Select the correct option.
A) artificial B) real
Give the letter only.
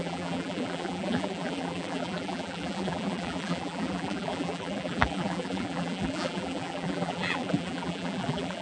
A